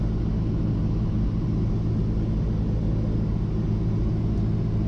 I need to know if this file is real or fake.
real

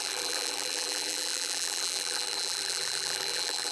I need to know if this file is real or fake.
fake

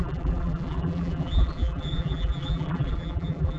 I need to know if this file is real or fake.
fake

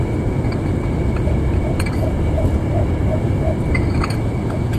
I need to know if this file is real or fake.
real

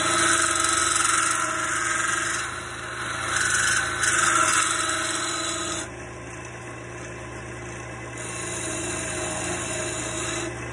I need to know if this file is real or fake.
real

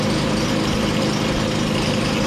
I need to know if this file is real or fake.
real